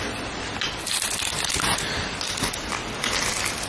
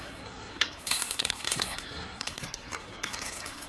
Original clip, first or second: first